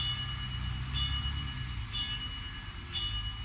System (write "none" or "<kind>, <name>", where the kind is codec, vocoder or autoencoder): none